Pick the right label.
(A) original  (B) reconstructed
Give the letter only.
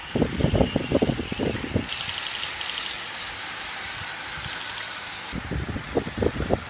A